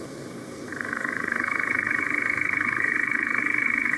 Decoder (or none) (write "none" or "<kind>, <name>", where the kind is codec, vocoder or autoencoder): codec, SNAC